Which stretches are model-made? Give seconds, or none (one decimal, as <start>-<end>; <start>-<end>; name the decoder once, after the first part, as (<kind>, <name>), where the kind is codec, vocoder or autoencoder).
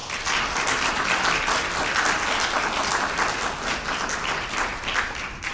4.7-5.5 (vocoder, BigVGAN v2)